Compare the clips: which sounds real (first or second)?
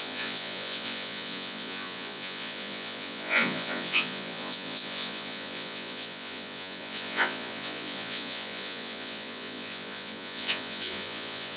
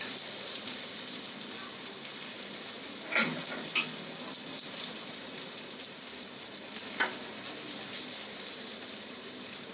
second